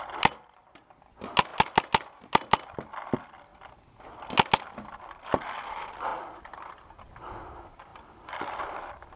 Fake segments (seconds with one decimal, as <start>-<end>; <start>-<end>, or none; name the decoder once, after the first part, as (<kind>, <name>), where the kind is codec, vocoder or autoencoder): 7.9-8.6 (vocoder, BigVGAN v2)